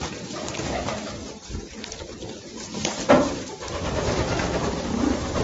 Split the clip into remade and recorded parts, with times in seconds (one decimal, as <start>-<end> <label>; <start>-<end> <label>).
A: 0.0-1.2 recorded; 1.2-3.6 remade; 3.6-4.6 recorded; 4.6-5.4 remade